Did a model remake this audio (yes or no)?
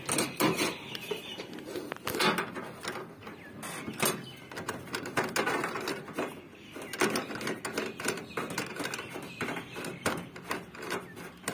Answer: no